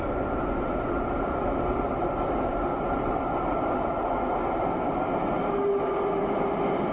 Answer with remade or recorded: recorded